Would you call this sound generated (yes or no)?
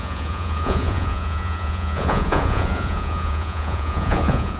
yes